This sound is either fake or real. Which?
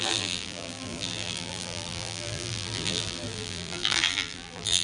fake